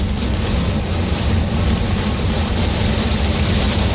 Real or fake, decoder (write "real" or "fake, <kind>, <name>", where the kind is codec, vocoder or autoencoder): real